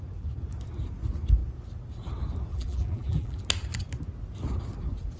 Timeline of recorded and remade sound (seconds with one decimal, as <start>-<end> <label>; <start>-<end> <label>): 0.0-2.5 recorded; 2.5-3.4 remade; 3.4-5.2 recorded